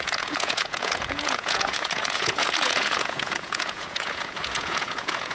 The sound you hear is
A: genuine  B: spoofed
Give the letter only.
B